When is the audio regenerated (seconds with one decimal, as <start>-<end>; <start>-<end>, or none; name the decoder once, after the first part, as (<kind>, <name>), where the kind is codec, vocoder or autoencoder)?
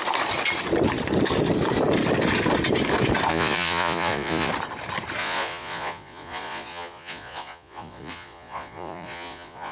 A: 3.3-4.5 (vocoder, Vocos); 5.2-9.7